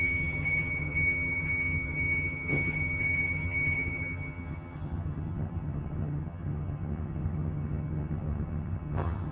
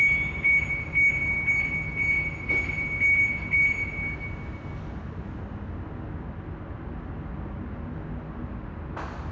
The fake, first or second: first